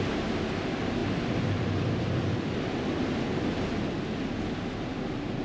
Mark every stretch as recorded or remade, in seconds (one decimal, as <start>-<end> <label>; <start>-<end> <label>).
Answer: 0.0-5.4 recorded